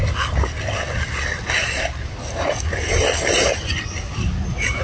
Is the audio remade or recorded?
recorded